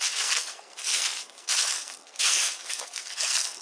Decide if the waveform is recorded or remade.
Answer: remade